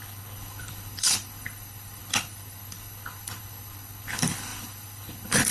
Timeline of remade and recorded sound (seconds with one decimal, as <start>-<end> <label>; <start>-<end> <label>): 0.0-5.5 remade